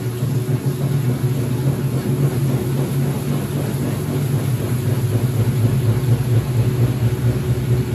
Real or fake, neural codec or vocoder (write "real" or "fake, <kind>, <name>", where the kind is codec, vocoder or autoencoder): real